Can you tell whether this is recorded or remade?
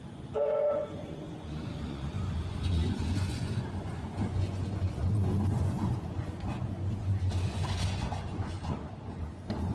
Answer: remade